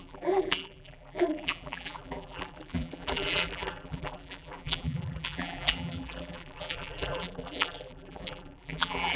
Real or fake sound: fake